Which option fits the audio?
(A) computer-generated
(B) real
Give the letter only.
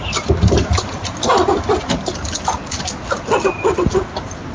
B